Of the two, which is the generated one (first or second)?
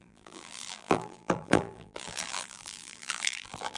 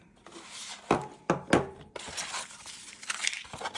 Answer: first